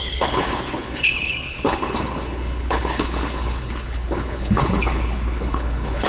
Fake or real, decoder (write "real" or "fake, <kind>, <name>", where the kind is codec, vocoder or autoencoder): fake, codec, HILCodec